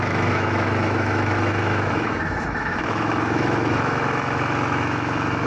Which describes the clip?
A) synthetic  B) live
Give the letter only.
A